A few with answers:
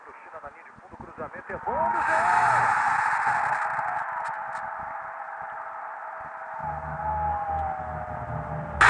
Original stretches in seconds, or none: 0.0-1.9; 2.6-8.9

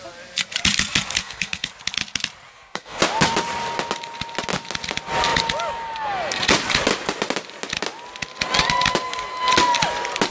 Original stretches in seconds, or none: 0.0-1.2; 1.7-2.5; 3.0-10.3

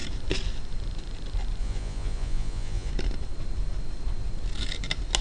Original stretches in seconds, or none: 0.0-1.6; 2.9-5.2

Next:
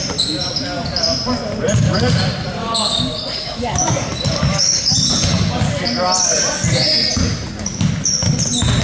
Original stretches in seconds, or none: 0.0-2.6; 4.9-8.8

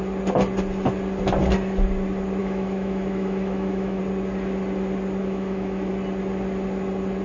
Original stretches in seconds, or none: 0.0-2.4; 4.0-5.2; 5.9-7.2

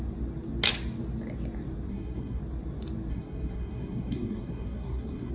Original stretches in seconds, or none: 0.0-1.9; 2.4-3.1

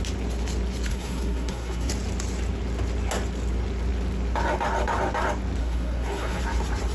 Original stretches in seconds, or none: 0.0-0.9; 1.9-5.6; 6.4-6.9

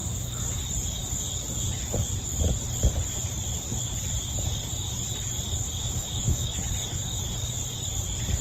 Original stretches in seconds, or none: 0.0-5.8; 6.6-8.4